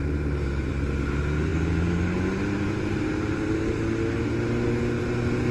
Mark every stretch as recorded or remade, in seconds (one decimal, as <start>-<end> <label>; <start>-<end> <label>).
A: 0.0-5.5 recorded